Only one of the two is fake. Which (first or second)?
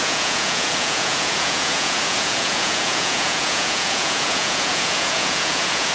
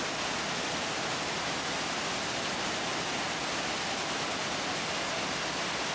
first